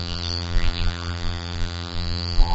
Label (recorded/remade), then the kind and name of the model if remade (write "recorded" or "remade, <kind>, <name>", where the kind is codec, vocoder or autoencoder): remade, vocoder, BigVGAN v2